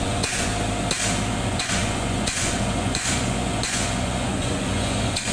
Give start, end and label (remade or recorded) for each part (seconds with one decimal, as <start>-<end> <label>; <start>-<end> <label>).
0.0-0.5 remade; 0.5-1.4 recorded; 1.4-5.3 remade